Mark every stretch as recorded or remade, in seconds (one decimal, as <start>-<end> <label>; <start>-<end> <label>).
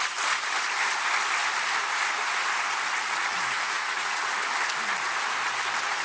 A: 0.0-3.3 recorded; 3.3-4.3 remade; 4.3-6.0 recorded